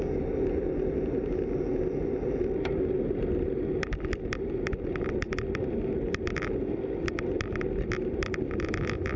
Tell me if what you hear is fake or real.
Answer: real